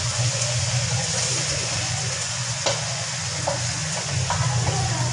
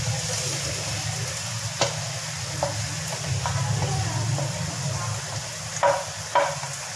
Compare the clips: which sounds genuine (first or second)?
second